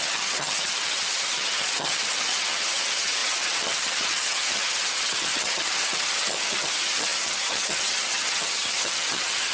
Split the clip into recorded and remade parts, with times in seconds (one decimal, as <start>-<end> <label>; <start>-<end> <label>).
0.0-9.5 remade